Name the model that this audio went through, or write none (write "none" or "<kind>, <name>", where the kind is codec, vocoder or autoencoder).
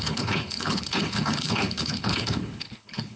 codec, HILCodec